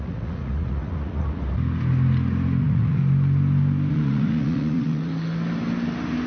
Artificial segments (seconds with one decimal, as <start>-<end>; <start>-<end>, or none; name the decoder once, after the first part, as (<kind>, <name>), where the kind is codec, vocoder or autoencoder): 0.0-1.4 (vocoder, Vocos); 2.6-3.0; 3.9-5.1